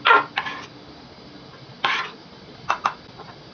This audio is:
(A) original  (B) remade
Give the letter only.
A